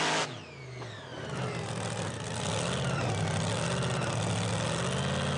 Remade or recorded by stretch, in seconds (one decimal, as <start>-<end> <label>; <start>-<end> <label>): 0.0-5.4 recorded